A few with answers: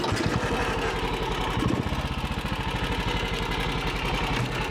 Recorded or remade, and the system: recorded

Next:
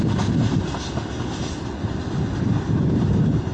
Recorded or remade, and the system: recorded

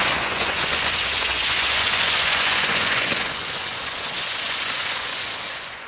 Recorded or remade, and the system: remade, vocoder, Vocos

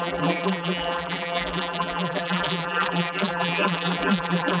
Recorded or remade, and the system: remade, vocoder, BigVGAN v2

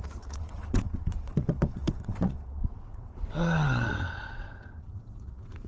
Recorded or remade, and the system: remade, vocoder, WaveNeXt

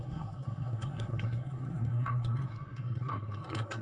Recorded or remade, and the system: remade, codec, SNAC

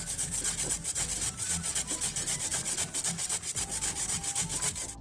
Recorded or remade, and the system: recorded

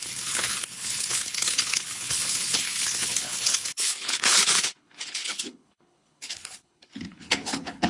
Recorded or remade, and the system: remade, codec, HILCodec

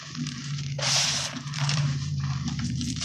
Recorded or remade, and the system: remade, vocoder, BigVGAN v2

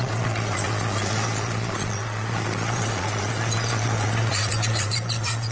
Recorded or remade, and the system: remade, vocoder, Vocos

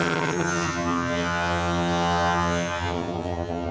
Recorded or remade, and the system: remade, vocoder, HiFi-GAN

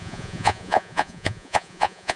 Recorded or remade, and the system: remade, vocoder, Vocos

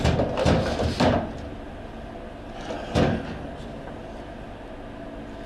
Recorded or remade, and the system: recorded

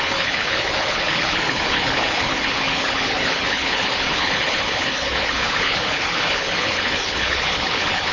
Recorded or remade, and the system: remade, codec, HILCodec